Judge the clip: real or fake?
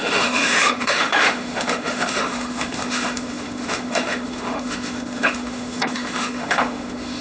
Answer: fake